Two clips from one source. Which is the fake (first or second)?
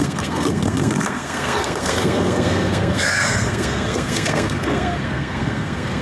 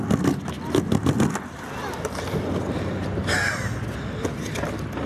first